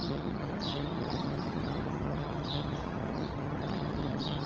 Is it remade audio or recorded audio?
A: remade